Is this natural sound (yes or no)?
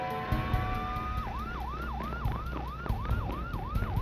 yes